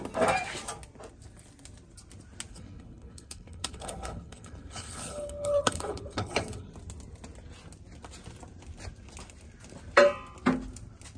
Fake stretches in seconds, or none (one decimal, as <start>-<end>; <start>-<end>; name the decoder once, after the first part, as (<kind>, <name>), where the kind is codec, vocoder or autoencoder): 2.5-6.7 (codec, HILCodec)